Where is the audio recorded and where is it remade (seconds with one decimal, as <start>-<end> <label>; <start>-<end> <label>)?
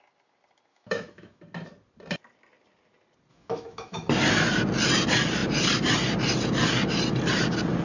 0.0-0.7 recorded; 0.7-1.4 remade; 1.4-3.3 recorded; 3.3-4.1 remade; 4.1-7.8 recorded